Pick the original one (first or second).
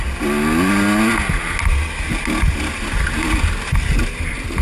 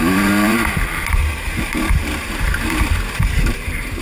first